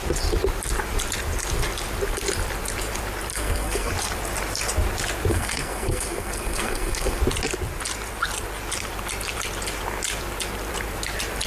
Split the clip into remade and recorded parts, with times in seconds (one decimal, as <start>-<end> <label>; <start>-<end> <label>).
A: 0.0-3.3 recorded; 3.3-3.9 remade; 3.9-5.3 recorded; 5.3-7.2 remade; 7.2-11.5 recorded